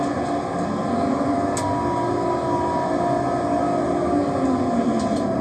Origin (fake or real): real